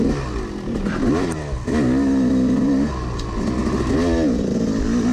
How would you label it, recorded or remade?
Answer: recorded